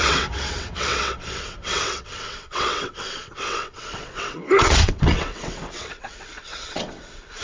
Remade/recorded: remade